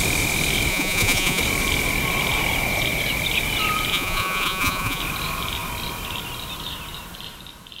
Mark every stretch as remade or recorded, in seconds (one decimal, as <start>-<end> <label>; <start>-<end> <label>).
0.0-0.7 recorded; 0.7-1.4 remade; 1.4-3.9 recorded; 3.9-5.0 remade; 5.0-7.8 recorded